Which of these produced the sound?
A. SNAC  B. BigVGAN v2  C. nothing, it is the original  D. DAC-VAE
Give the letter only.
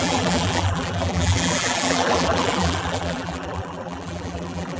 B